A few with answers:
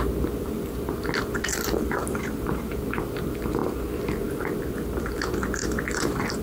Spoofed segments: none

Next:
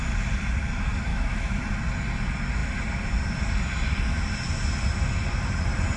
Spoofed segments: 1.1-1.6 (autoencoder, DAC-VAE)

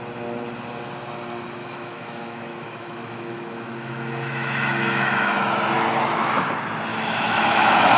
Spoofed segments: 1.6-5.4 (autoencoder, DAC-VAE); 6.9-8.0

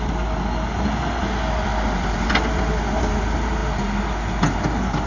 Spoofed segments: none

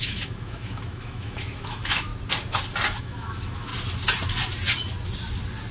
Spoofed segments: 0.0-2.1 (autoencoder, DAC-VAE); 3.0-3.7

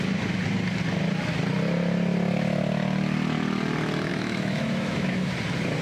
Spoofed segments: 4.1-5.3 (autoencoder, DAC-VAE)

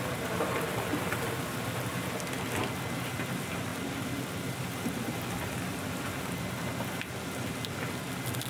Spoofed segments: none

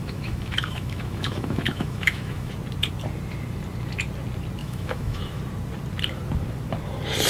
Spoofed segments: 0.0-2.5 (autoencoder, DAC-VAE); 4.6-5.4